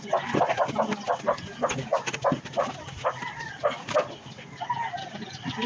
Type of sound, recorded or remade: recorded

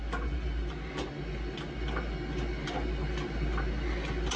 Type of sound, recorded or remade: recorded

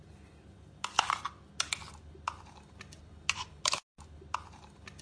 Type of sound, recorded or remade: recorded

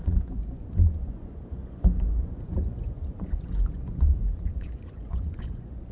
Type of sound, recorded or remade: remade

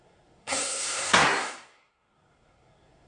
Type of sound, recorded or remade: remade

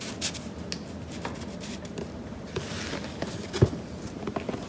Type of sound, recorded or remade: recorded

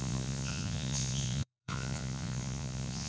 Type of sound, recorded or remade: remade